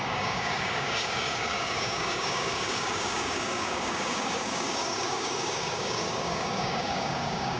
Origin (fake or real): fake